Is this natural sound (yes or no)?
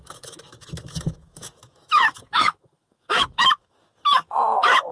no